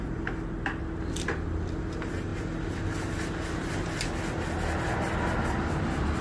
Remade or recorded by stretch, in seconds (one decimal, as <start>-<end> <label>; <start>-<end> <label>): 0.0-6.2 recorded